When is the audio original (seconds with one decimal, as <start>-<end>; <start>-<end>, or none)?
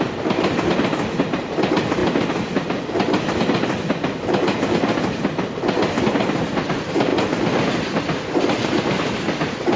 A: 0.0-9.8